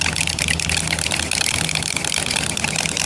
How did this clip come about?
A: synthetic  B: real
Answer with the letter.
B